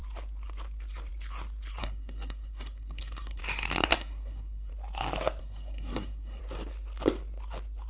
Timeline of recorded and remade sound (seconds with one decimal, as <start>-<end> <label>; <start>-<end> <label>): 0.0-1.8 recorded; 1.8-3.4 remade; 3.4-3.9 recorded; 3.9-4.7 remade; 4.7-5.4 recorded; 5.4-6.4 remade; 6.4-7.9 recorded